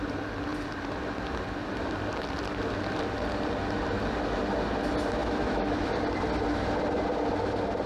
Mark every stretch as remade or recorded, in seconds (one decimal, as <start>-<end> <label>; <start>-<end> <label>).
0.0-5.2 recorded; 5.2-5.9 remade; 5.9-7.9 recorded